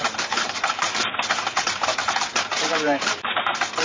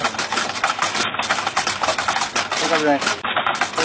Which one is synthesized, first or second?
first